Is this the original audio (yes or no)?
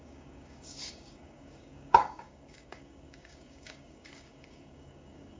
no